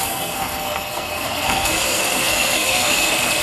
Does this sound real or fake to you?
fake